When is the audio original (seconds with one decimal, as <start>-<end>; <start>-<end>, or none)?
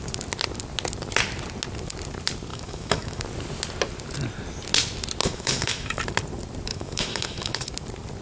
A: 0.0-2.5; 3.2-5.2; 6.0-6.7; 7.7-8.2